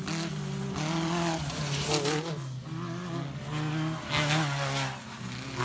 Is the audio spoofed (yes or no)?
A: no